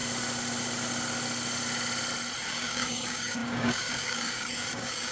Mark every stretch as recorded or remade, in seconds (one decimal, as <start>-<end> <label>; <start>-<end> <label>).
0.0-2.5 recorded; 2.5-5.1 remade